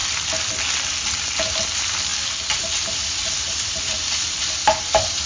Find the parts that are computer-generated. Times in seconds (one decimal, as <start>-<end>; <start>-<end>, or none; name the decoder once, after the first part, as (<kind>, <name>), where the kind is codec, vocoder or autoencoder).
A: 0.0-0.5 (vocoder, BigVGAN v2); 2.1-2.6